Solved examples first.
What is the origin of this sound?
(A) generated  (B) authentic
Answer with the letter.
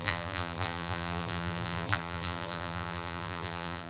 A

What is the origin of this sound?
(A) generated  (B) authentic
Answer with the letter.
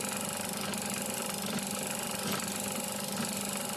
B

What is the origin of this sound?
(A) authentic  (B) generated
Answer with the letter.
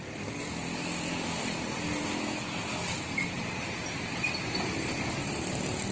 A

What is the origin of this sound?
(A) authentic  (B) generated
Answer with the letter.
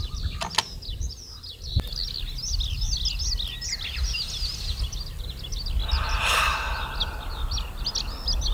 A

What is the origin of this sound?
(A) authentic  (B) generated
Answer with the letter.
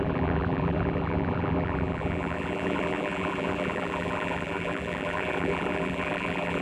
B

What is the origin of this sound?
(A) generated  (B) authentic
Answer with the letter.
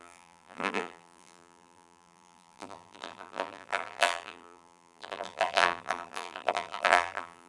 A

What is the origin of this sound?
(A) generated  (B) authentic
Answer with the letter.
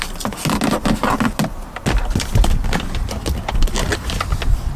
B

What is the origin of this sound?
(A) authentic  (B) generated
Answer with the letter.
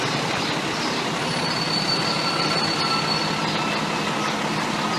A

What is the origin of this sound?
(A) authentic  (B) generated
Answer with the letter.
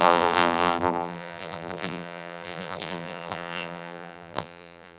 B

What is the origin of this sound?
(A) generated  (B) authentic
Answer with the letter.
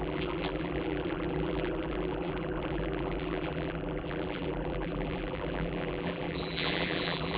A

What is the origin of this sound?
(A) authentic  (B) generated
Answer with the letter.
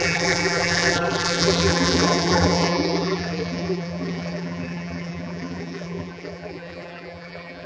B